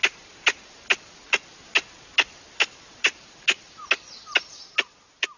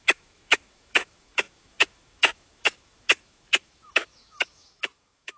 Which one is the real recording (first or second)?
first